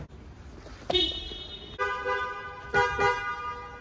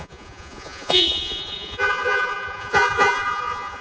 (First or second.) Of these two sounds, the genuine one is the first